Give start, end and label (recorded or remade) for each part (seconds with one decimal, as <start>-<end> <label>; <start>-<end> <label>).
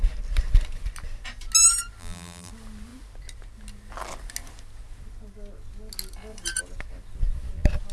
0.0-2.0 recorded; 2.0-2.5 remade; 2.5-7.9 recorded